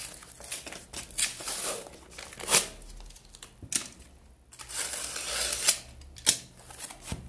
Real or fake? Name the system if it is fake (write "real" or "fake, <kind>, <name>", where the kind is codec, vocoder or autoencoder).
real